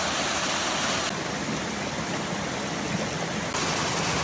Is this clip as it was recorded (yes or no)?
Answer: yes